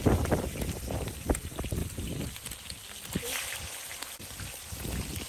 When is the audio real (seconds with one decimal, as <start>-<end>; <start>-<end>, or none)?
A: 0.0-5.3